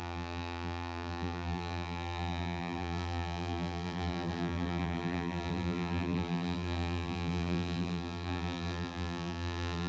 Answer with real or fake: fake